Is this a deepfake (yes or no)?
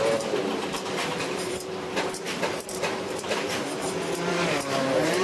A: yes